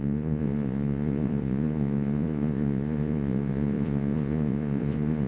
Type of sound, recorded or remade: remade